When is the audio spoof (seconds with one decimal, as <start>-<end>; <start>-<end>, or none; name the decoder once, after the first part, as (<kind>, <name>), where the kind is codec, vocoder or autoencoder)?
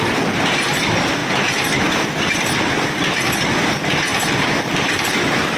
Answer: 0.0-1.2 (vocoder, BigVGAN v2); 2.3-5.6